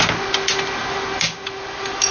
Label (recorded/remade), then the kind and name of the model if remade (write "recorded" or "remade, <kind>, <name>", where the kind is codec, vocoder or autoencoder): recorded